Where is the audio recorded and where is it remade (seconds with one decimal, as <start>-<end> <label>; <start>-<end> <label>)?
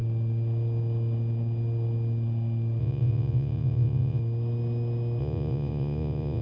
0.0-2.8 recorded; 2.8-4.2 remade; 4.2-5.2 recorded; 5.2-6.4 remade